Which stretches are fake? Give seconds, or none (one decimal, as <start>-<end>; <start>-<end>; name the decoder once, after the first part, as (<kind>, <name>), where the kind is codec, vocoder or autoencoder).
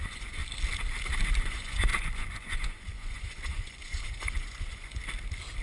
0.0-0.4 (vocoder, Vocos); 1.4-5.0